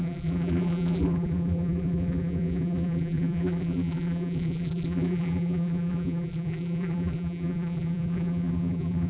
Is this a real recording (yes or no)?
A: no